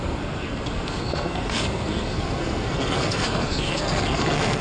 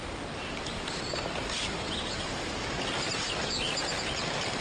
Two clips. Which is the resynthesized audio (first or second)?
first